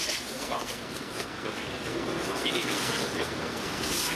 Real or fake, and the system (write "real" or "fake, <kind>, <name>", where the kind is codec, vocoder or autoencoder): fake, codec, SNAC